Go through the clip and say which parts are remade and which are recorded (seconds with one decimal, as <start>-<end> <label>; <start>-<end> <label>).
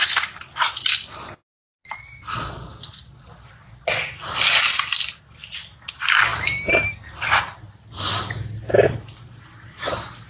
0.0-1.8 recorded; 1.8-3.9 remade; 3.9-10.3 recorded